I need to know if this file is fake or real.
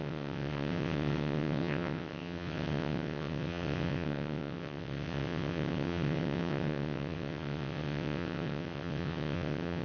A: fake